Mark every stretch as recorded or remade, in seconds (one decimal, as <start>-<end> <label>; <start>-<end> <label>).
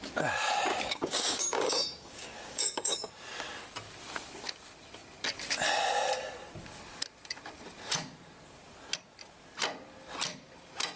0.0-0.7 recorded; 0.7-3.1 remade; 3.1-11.0 recorded